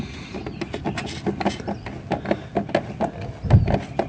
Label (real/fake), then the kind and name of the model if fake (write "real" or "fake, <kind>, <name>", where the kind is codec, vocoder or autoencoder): real